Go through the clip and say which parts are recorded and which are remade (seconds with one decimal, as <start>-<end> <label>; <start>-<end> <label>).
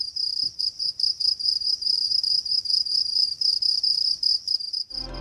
0.0-4.3 remade; 4.3-5.2 recorded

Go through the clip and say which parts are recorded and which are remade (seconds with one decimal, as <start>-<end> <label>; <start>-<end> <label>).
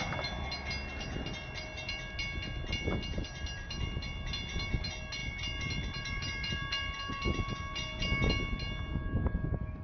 0.0-9.8 recorded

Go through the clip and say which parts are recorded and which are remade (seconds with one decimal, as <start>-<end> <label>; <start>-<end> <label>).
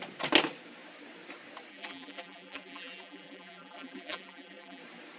0.0-1.7 recorded; 1.7-4.8 remade; 4.8-5.2 recorded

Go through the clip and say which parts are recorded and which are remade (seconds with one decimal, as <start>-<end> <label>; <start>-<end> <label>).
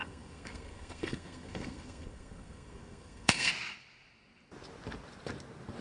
0.0-3.5 remade; 3.5-5.8 recorded